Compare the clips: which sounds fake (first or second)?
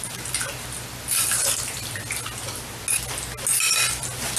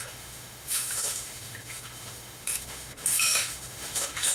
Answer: second